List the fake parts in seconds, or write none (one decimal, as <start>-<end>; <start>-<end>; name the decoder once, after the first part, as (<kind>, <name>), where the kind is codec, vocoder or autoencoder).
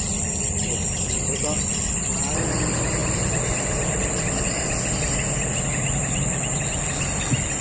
none